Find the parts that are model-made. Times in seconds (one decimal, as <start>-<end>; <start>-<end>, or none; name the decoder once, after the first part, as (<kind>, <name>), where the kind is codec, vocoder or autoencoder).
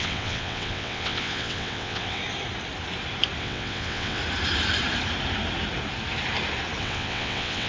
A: 0.0-2.2 (vocoder, WaveNeXt); 3.4-4.2; 6.8-7.7